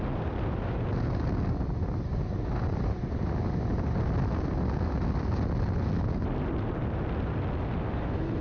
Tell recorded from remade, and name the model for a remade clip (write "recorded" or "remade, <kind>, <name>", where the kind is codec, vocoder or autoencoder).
recorded